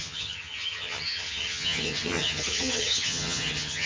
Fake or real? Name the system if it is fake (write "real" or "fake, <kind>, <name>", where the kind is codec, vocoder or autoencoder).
fake, vocoder, HiFi-GAN